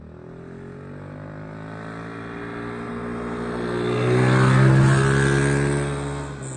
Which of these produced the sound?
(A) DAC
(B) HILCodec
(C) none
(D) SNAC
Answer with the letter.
C